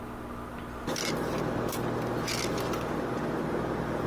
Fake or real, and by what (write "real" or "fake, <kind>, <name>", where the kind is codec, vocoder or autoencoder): real